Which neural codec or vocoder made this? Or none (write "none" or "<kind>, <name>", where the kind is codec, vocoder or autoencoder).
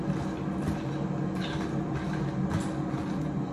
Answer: none